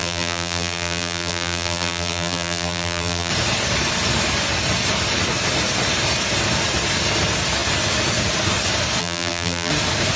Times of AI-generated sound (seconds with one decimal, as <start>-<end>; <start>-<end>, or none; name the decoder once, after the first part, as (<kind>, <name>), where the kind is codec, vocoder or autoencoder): 0.0-3.3 (vocoder, BigVGAN v2); 9.0-9.7

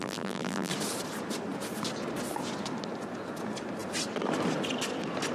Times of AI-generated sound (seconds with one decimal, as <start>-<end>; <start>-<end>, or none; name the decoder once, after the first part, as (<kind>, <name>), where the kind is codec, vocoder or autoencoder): 0.0-0.7 (vocoder, BigVGAN v2)